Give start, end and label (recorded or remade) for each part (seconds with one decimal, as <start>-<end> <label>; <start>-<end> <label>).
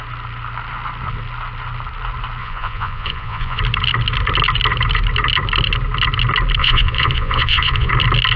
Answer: 0.0-2.4 recorded; 2.4-3.6 remade; 3.6-6.6 recorded; 6.6-7.9 remade; 7.9-8.4 recorded